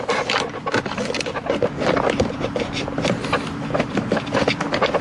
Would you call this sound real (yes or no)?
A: yes